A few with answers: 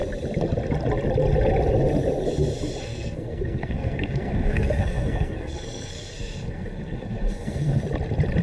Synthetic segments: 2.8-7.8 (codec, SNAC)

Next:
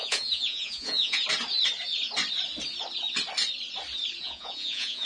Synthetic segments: 0.0-1.2 (vocoder, Vocos); 4.2-5.0

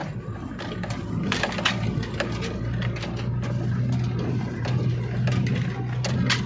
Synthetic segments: none

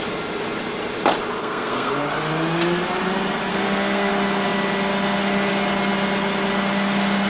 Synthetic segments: 1.4-1.9 (codec, SNAC); 3.5-4.1

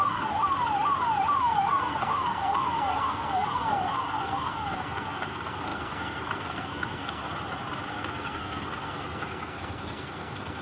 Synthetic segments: 0.0-0.4 (codec, SNAC); 1.4-7.2; 7.9-10.6

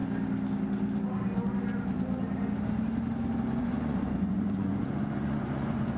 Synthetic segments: 3.6-6.0 (vocoder, Vocos)

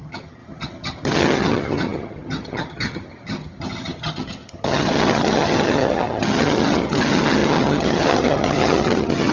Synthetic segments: 0.0-9.3 (vocoder, HiFi-GAN)

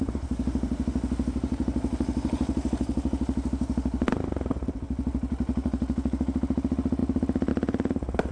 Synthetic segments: none